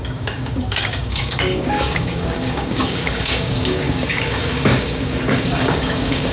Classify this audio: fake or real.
fake